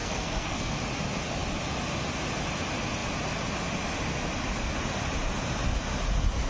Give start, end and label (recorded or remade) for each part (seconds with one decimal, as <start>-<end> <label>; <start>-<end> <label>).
0.0-0.8 remade; 0.8-6.5 recorded